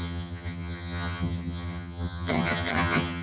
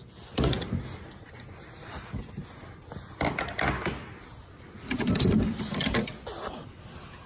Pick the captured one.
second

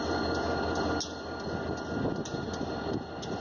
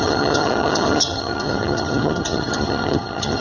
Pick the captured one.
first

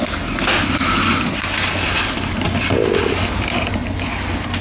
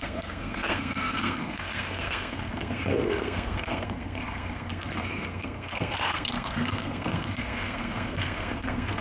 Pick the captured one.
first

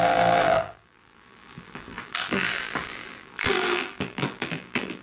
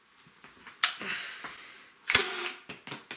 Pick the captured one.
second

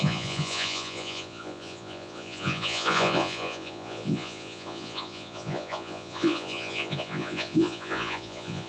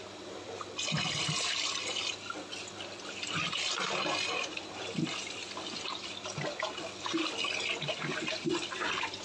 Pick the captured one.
second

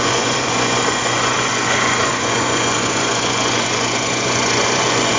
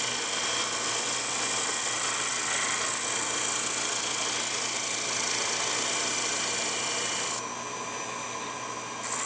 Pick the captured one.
second